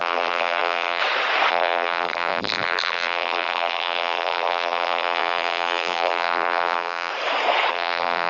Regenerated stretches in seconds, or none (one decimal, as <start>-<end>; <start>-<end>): 0.0-1.0; 1.5-7.1; 7.7-8.3